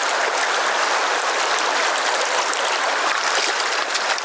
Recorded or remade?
recorded